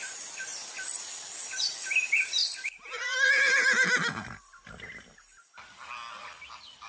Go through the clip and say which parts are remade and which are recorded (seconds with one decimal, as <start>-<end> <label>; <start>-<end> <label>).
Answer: 0.0-6.9 recorded